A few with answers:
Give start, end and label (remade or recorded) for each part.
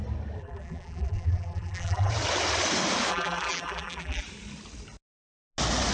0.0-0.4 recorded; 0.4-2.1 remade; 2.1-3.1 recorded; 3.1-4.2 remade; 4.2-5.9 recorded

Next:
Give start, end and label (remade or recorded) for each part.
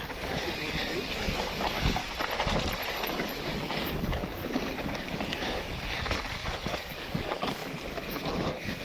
0.0-2.0 remade; 2.0-2.9 recorded; 2.9-8.8 remade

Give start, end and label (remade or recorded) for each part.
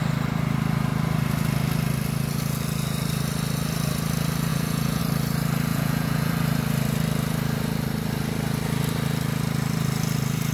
0.0-4.5 recorded; 4.5-5.0 remade; 5.0-5.7 recorded; 5.7-6.3 remade; 6.3-10.5 recorded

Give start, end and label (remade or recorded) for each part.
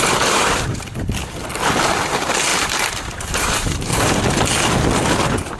0.0-2.5 recorded; 2.5-4.2 remade; 4.2-5.6 recorded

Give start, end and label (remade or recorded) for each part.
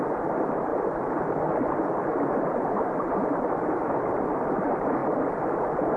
0.0-6.0 recorded